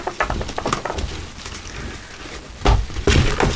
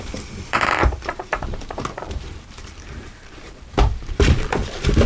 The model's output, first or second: second